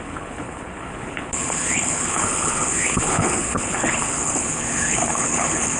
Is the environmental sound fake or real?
fake